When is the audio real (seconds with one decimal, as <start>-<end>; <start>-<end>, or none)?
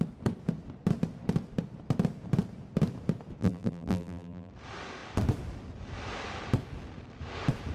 0.0-3.4; 4.5-7.7